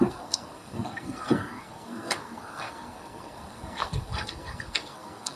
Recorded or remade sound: remade